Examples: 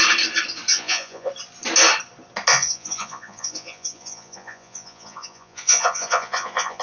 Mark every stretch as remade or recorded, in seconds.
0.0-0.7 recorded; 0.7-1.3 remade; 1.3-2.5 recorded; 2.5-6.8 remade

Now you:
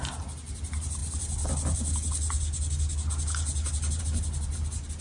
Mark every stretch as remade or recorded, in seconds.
0.0-5.0 recorded

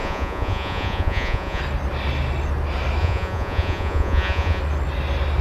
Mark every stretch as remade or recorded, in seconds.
0.0-1.6 remade; 1.6-3.0 recorded; 3.0-4.6 remade; 4.6-5.4 recorded

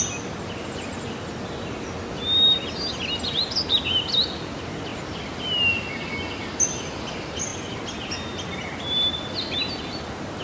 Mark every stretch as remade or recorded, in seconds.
0.0-10.4 recorded